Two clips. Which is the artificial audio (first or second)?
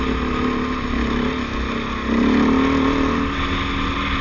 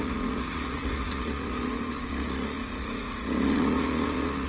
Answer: second